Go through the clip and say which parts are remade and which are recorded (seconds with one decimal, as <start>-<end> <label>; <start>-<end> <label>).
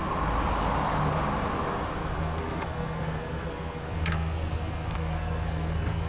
0.0-2.0 recorded; 2.0-6.1 remade